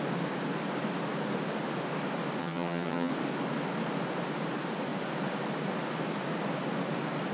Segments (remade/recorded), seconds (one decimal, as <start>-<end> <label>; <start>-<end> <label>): 0.0-2.4 recorded; 2.4-3.1 remade; 3.1-7.3 recorded